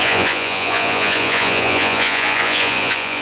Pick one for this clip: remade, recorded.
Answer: remade